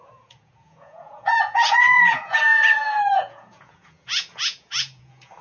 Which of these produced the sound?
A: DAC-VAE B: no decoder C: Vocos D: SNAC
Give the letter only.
C